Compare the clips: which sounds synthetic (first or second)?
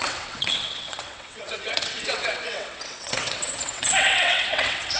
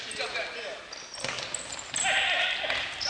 first